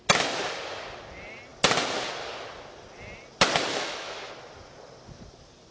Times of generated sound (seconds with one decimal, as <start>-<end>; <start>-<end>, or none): 3.7-4.3